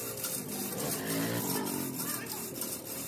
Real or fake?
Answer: real